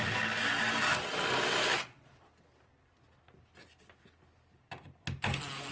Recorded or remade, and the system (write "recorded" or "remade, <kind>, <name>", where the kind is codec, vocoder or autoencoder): recorded